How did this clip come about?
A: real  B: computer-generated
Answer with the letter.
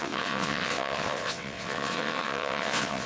B